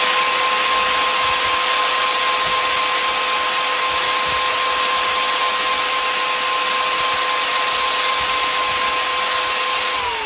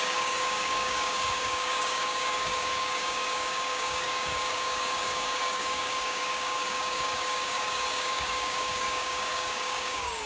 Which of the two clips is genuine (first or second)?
first